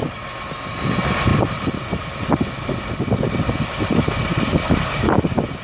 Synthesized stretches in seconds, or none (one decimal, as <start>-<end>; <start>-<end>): none